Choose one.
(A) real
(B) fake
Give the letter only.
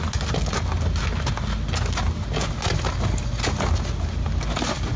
A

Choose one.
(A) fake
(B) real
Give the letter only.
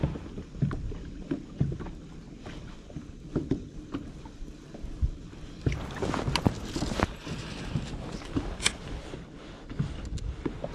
B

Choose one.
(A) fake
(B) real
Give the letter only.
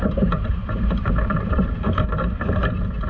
A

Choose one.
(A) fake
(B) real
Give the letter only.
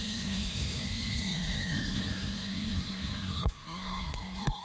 A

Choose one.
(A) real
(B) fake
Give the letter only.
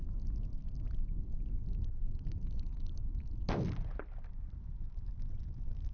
A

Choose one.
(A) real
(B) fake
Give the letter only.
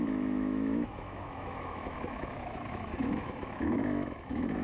B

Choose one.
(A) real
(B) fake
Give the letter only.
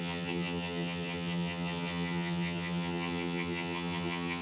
B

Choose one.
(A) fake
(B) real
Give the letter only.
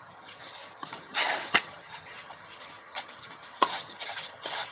A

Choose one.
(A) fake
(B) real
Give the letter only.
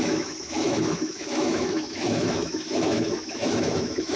A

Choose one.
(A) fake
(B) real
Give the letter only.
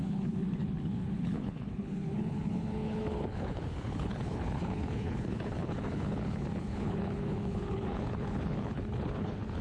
A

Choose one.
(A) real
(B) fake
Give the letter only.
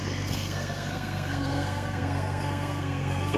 B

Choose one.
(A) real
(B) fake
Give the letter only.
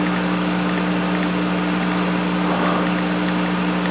A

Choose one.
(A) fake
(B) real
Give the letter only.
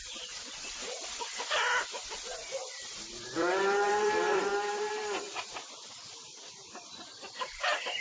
A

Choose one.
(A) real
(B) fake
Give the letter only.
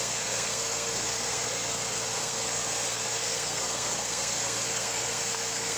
B